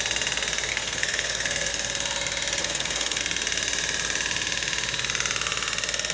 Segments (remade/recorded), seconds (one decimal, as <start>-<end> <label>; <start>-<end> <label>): 0.0-0.7 recorded; 0.7-1.7 remade; 1.7-2.6 recorded; 2.6-3.2 remade; 3.2-6.1 recorded